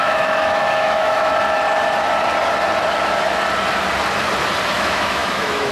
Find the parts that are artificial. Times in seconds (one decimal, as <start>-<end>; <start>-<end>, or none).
0.0-1.3; 4.7-5.7